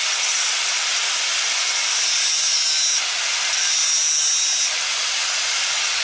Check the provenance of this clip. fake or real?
real